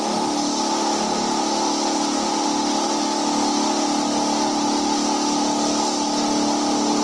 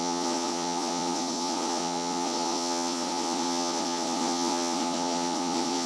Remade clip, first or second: second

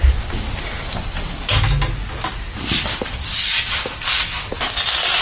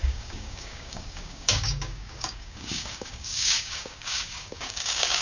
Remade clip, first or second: second